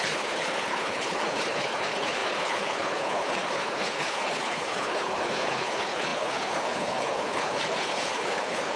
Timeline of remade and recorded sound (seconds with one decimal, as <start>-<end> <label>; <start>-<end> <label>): 0.0-8.8 remade